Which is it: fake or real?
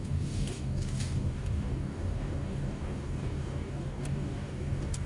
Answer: fake